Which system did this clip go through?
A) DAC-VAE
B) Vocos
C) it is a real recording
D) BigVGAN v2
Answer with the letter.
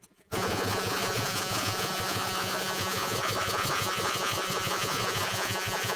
B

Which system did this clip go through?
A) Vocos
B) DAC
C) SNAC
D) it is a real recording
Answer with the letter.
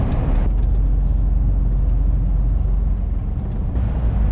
D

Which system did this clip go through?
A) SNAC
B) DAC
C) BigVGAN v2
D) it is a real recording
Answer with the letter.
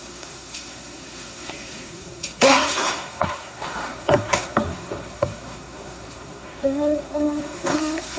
A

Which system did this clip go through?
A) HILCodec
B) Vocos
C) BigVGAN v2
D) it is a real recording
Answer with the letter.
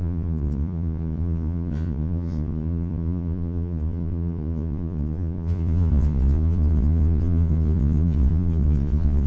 B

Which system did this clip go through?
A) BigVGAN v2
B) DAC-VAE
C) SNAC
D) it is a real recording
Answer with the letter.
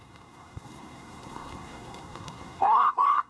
C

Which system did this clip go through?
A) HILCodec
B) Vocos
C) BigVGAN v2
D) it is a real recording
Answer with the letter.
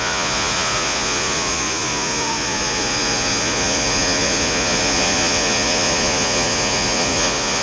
B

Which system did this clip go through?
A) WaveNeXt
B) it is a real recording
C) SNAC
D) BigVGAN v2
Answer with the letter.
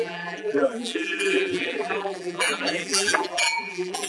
D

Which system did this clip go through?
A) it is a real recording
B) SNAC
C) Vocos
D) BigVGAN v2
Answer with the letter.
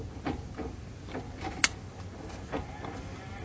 A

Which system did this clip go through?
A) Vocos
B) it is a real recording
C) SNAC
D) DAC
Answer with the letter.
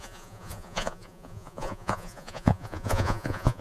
A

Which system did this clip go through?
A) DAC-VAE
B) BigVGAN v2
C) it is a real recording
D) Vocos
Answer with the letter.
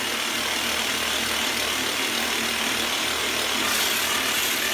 C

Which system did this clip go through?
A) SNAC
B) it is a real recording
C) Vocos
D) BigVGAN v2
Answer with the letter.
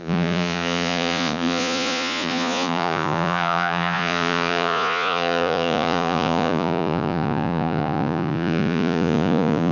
C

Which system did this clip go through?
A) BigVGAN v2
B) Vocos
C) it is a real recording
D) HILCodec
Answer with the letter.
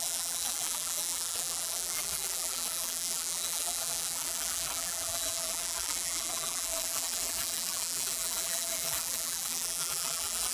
A